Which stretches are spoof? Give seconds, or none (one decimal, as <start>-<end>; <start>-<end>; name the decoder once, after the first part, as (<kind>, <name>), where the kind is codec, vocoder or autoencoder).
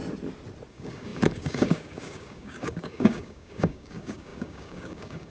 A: 0.7-5.3 (codec, DAC)